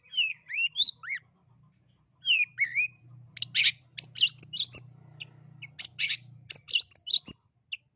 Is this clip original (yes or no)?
yes